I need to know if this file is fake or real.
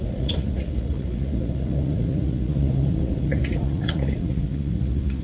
fake